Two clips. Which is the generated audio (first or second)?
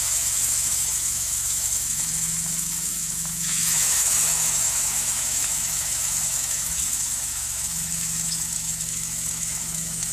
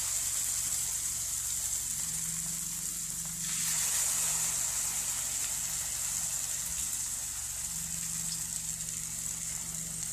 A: first